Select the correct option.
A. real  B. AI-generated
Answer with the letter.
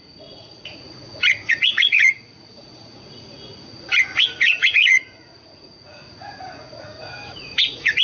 B